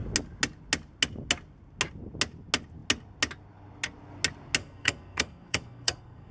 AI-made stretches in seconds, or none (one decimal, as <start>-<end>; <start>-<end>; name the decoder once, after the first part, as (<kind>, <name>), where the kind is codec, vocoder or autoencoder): 4.6-6.3 (codec, SNAC)